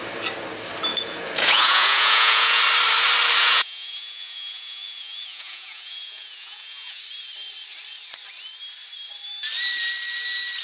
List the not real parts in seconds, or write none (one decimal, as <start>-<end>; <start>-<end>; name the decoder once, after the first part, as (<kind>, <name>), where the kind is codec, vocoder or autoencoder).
0.9-2.6 (vocoder, Vocos); 3.4-7.0